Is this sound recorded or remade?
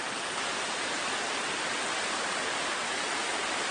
recorded